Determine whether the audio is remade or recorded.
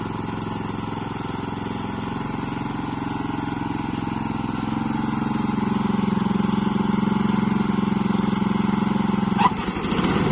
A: recorded